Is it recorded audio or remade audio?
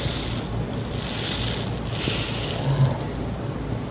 recorded